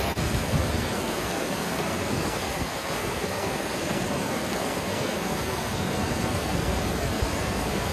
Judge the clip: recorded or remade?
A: remade